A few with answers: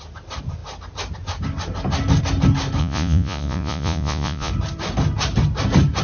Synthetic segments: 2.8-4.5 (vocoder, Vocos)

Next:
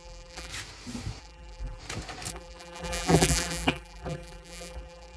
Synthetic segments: 0.0-0.5 (vocoder, BigVGAN v2); 1.2-1.8; 2.3-5.2

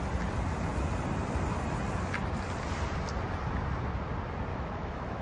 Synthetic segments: 4.5-5.2 (autoencoder, DAC-VAE)